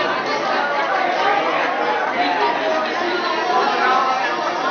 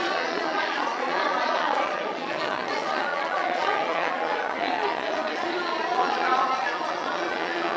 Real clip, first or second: first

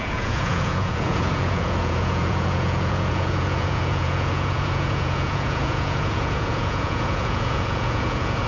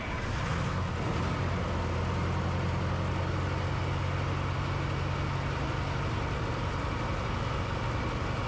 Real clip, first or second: second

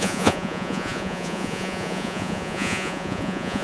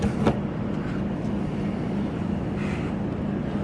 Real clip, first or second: second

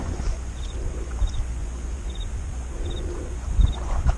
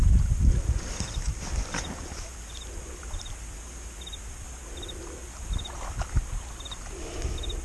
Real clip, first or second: second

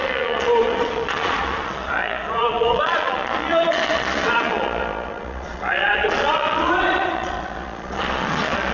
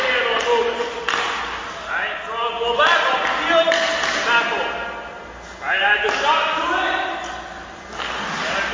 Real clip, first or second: second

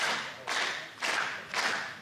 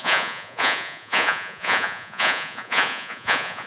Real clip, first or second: first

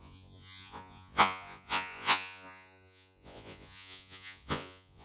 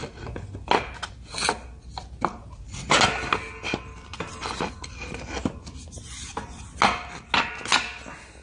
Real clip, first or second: second